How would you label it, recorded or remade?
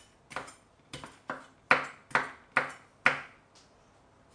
recorded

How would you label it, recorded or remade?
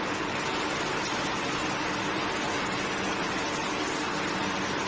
recorded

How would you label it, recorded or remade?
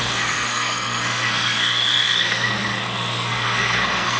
remade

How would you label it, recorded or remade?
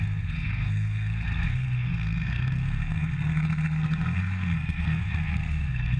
remade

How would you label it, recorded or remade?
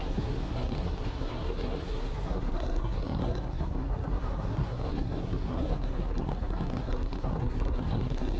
remade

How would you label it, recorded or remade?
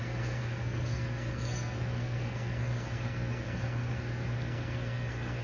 remade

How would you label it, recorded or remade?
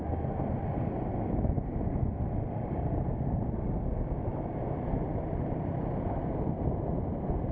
recorded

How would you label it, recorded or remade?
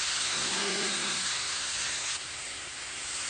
remade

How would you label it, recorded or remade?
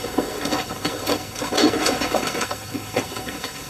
remade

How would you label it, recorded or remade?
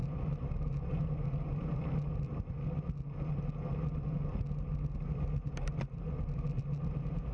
recorded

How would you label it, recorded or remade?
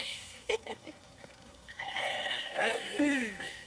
remade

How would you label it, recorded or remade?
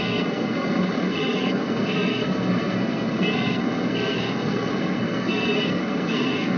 remade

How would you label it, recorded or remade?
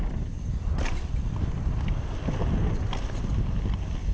recorded